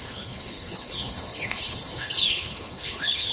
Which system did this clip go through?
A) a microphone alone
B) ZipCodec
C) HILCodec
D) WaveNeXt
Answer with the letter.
C